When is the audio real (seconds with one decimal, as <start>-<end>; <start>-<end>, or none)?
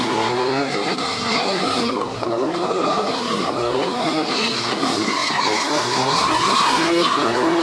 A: none